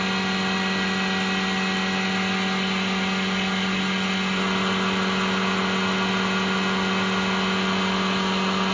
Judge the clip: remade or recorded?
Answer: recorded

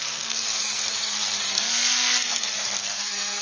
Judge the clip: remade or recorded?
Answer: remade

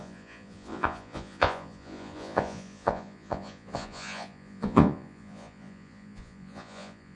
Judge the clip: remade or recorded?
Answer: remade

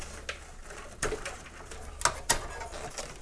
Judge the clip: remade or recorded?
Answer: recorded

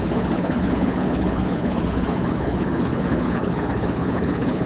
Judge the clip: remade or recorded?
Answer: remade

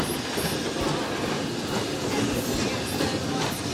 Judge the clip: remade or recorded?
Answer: recorded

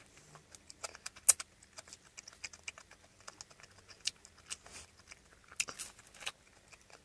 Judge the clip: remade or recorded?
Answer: recorded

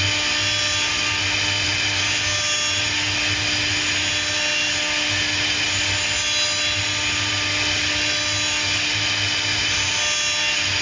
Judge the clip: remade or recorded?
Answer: recorded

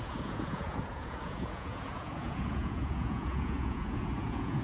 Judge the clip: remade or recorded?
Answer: remade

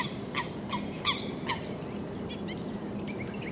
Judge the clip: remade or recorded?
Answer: recorded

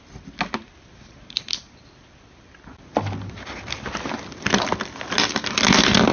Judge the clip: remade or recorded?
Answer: recorded